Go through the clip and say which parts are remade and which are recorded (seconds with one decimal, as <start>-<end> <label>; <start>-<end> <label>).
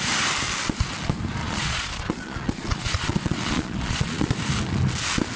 0.0-1.4 recorded; 1.4-4.3 remade; 4.3-5.4 recorded